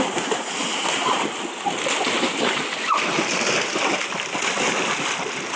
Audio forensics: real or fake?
real